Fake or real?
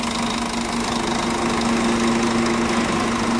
real